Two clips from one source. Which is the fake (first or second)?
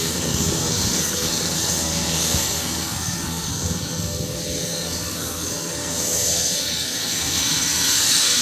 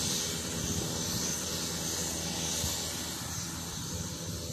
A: first